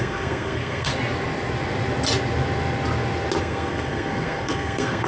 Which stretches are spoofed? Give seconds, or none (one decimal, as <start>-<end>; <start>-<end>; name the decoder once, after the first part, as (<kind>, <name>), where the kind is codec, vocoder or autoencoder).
0.0-0.9 (codec, SNAC); 3.4-5.1